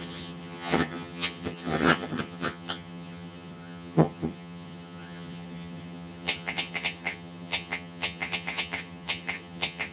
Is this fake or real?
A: fake